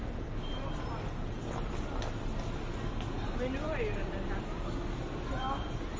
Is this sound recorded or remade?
recorded